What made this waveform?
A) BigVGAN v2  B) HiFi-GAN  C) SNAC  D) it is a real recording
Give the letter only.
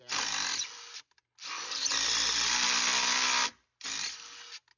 D